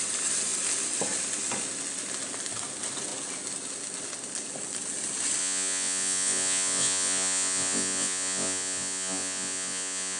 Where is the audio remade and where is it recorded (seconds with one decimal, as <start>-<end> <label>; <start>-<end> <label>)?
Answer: 0.0-5.4 recorded; 5.4-10.2 remade

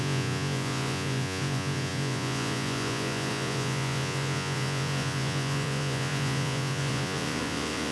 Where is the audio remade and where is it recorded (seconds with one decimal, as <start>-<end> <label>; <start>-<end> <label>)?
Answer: 0.0-7.9 remade

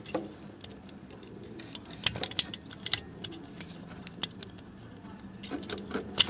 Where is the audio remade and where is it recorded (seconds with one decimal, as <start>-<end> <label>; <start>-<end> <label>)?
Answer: 0.0-6.3 recorded

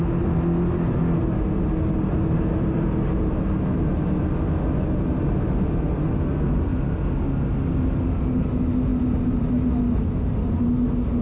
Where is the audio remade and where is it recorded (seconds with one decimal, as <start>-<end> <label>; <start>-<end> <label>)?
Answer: 0.0-11.2 recorded

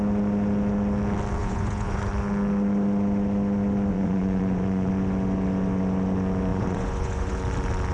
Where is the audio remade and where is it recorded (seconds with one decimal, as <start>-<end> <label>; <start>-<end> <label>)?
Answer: 0.0-1.4 recorded; 1.4-2.1 remade; 2.1-3.9 recorded; 3.9-4.9 remade; 4.9-6.5 recorded; 6.5-7.4 remade; 7.4-7.9 recorded

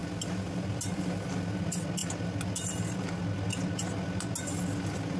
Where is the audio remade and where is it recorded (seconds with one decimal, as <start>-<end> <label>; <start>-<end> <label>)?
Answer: 0.0-5.2 recorded

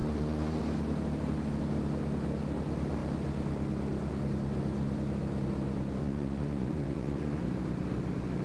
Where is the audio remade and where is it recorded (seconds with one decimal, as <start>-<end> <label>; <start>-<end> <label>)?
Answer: 0.0-0.6 remade; 0.6-6.0 recorded; 6.0-7.4 remade; 7.4-8.4 recorded

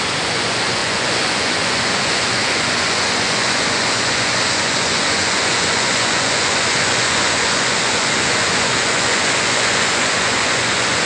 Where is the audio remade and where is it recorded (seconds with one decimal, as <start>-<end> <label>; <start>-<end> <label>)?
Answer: 0.0-11.1 remade